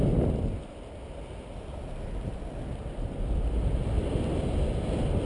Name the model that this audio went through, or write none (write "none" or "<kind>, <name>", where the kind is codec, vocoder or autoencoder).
none